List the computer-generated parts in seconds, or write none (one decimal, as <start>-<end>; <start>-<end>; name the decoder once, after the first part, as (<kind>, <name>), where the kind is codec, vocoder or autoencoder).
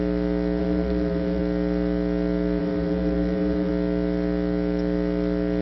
0.6-1.4 (vocoder, BigVGAN v2); 2.6-3.7